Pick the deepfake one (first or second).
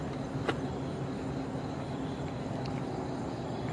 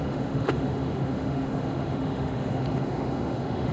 second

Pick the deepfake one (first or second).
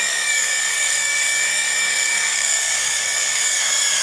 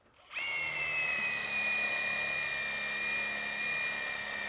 first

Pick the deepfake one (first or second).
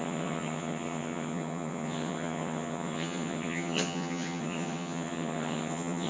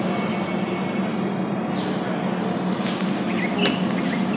first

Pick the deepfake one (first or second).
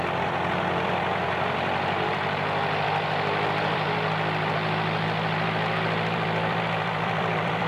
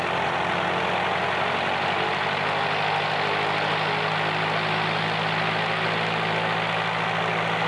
first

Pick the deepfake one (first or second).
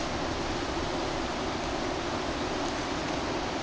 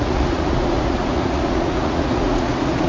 second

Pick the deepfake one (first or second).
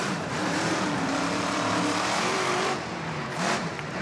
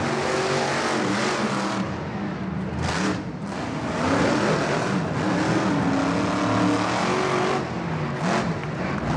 first